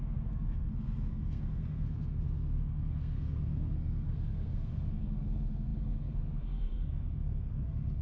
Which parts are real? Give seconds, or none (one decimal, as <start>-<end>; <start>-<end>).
none